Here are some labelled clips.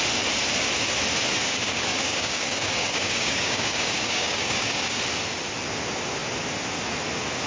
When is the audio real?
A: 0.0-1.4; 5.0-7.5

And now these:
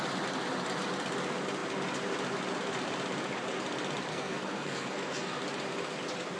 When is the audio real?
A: 0.0-4.1; 5.4-6.4

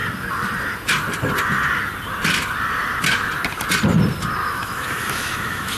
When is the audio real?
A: 0.0-4.4

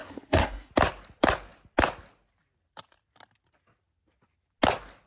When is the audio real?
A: 0.7-5.1

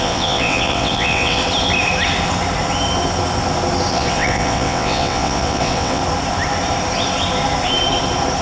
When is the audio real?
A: 1.4-3.9; 6.0-8.4

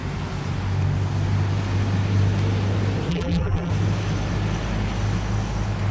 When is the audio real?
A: 0.0-3.1; 3.7-5.9

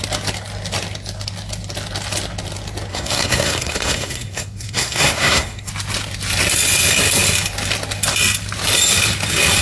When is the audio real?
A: 0.0-2.9; 5.7-9.6

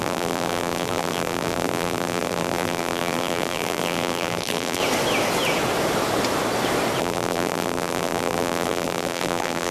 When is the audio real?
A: 4.8-7.0